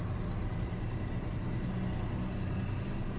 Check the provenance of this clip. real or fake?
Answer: real